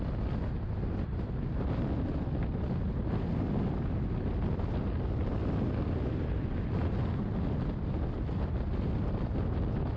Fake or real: real